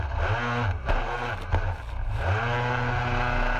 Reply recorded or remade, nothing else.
recorded